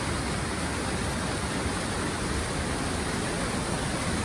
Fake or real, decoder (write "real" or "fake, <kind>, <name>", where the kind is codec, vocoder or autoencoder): real